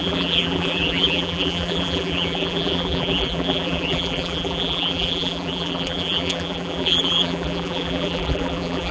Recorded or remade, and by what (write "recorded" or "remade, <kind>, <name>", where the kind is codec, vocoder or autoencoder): remade, vocoder, BigVGAN v2